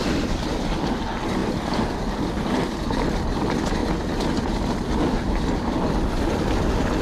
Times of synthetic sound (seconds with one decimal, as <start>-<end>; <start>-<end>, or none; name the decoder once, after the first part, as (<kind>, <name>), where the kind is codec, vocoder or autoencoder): 0.0-1.4 (vocoder, BigVGAN v2); 2.3-3.8; 5.6-7.0

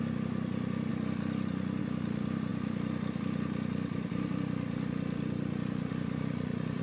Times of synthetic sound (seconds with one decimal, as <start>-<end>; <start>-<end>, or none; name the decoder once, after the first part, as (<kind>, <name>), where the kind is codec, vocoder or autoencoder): 0.9-1.8 (vocoder, BigVGAN v2); 2.5-6.8

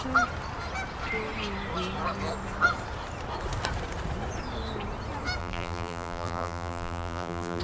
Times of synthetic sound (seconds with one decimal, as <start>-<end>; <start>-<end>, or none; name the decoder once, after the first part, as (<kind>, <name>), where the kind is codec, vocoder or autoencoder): 5.4-7.6 (vocoder, BigVGAN v2)

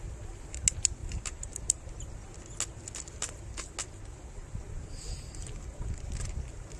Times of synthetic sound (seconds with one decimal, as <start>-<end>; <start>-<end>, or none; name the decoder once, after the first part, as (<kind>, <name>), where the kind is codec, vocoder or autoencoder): 1.0-1.9 (vocoder, BigVGAN v2)